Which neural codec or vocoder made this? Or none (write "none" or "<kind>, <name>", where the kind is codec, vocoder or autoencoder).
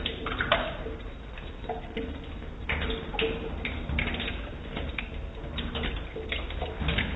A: none